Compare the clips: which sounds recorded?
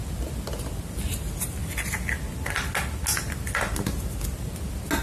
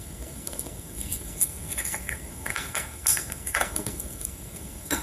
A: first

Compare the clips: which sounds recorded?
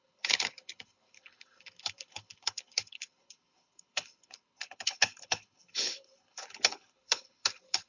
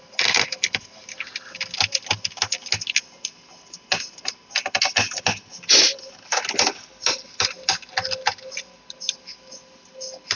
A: second